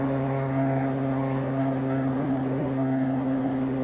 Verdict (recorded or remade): remade